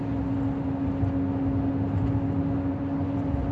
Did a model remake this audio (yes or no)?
no